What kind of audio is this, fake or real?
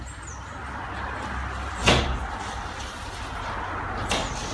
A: real